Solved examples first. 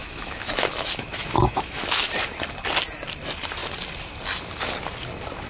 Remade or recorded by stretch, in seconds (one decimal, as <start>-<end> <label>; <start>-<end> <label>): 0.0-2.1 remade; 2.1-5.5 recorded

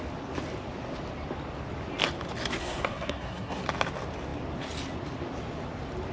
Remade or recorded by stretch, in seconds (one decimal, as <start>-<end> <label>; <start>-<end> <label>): 0.0-2.6 recorded; 2.6-3.6 remade; 3.6-6.1 recorded

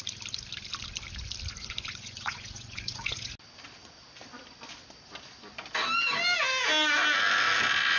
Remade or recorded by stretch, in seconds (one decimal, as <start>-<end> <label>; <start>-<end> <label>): 0.0-1.5 recorded; 1.5-3.3 remade; 3.3-8.0 recorded

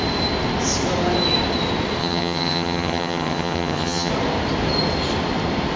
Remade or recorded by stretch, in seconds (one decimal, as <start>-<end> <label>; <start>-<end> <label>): 0.0-2.0 recorded; 2.0-4.1 remade; 4.1-5.8 recorded

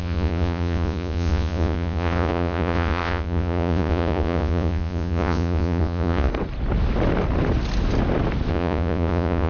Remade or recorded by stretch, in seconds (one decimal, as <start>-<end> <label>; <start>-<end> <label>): 0.0-6.3 remade; 6.3-8.5 recorded; 8.5-9.5 remade

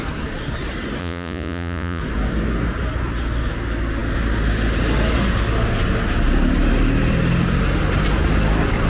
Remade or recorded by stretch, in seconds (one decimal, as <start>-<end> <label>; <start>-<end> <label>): 0.0-1.0 recorded; 1.0-2.0 remade; 2.0-8.9 recorded

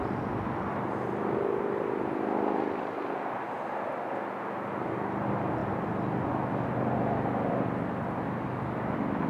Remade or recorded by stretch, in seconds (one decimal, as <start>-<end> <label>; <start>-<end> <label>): 0.0-9.3 recorded

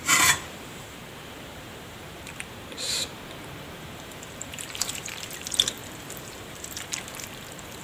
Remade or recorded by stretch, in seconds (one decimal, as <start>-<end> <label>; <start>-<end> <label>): 0.0-7.8 remade